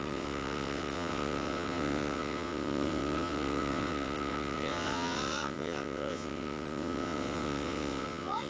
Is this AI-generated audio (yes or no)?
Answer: yes